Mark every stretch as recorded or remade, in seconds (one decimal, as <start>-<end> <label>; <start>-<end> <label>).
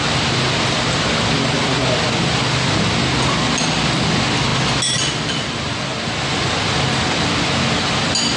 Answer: 0.0-8.4 recorded